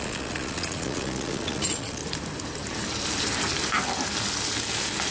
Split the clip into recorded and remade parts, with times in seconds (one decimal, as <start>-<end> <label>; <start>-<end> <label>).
0.0-2.0 remade; 2.0-5.1 recorded